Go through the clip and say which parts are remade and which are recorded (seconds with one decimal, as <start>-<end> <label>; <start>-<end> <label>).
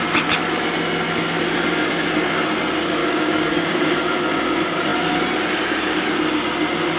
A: 0.0-3.0 recorded; 3.0-3.9 remade; 3.9-7.0 recorded